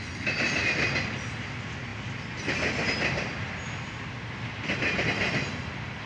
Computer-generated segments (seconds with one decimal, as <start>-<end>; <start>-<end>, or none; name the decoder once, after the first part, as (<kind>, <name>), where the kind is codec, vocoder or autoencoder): none